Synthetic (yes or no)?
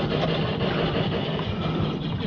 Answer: no